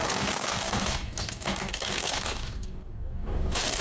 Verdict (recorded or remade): remade